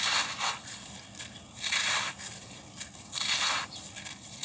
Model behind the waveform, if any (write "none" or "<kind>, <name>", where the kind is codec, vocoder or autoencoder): none